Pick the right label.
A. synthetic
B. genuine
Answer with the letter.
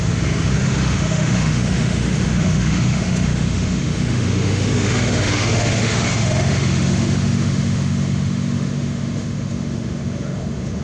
A